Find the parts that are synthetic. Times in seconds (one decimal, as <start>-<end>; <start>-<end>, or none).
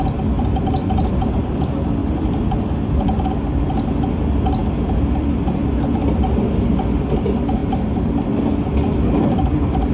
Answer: none